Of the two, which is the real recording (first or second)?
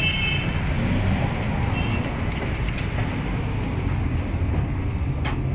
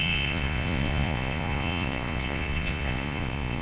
first